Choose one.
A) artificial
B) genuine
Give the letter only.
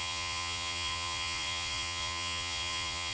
A